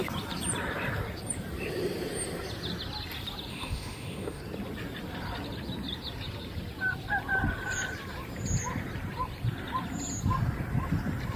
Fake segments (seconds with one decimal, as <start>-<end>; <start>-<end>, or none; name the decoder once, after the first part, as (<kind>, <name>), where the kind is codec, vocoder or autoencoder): 3.5-4.4 (autoencoder, DAC-VAE)